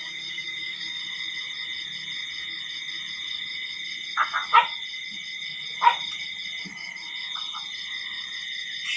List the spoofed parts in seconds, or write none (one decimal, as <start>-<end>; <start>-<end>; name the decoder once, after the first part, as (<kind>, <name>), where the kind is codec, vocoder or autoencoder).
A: 0.0-1.0 (codec, DAC)